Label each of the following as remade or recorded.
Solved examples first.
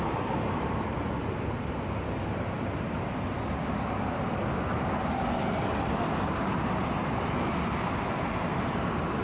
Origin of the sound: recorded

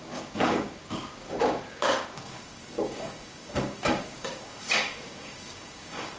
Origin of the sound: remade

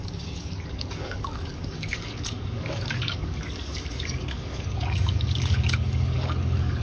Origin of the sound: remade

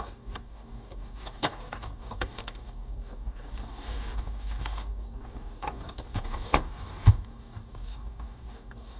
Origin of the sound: remade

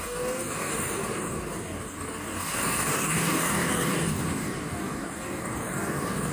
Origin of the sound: remade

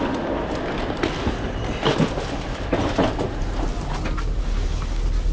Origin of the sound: recorded